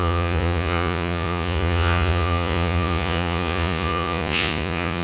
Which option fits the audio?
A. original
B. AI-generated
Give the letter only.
B